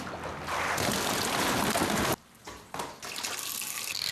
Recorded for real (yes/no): yes